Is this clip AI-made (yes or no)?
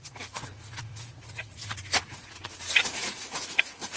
yes